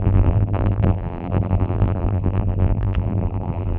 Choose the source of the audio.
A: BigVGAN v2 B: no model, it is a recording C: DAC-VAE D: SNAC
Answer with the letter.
A